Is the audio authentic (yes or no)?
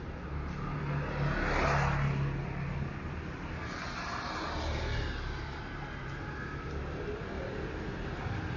yes